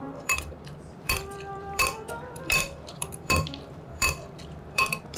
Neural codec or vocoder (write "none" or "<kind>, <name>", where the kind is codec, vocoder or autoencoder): vocoder, BigVGAN v2